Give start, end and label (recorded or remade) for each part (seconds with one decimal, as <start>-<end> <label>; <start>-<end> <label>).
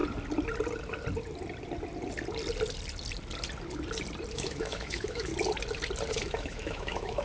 0.0-4.3 recorded; 4.3-5.3 remade; 5.3-6.1 recorded; 6.1-7.2 remade